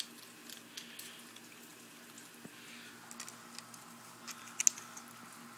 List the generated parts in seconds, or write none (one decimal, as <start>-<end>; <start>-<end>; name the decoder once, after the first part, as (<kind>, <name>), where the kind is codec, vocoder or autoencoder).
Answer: none

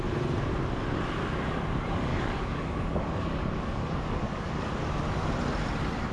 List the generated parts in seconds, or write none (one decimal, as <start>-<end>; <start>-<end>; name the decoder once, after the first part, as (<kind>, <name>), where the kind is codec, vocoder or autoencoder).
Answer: 2.1-4.7 (codec, DAC)

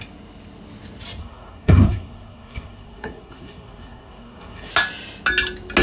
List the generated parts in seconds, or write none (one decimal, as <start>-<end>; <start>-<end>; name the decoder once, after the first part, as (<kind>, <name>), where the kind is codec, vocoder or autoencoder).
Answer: 1.2-4.7 (codec, SNAC)

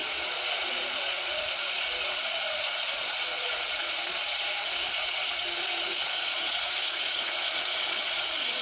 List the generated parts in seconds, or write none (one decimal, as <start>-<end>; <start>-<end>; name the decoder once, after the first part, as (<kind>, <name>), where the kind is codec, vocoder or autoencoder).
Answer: 0.0-8.6 (vocoder, Vocos)

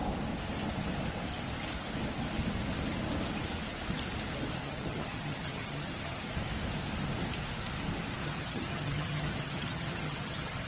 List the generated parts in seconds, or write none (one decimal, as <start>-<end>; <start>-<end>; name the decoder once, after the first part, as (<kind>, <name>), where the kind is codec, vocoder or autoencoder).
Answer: 4.6-6.3 (vocoder, HiFi-GAN); 8.2-10.7

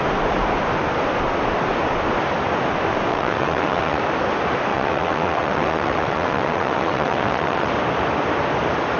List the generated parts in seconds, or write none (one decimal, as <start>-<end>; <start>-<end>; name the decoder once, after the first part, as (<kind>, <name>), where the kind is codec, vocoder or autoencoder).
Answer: 3.1-4.0 (vocoder, WaveNeXt); 4.7-7.7

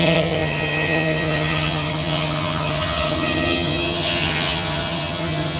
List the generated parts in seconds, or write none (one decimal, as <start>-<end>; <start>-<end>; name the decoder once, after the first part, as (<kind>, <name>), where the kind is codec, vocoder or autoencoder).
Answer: 0.0-5.6 (vocoder, HiFi-GAN)